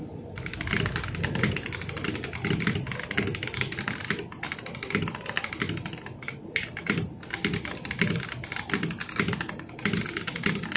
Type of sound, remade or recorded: recorded